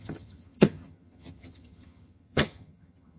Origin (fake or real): fake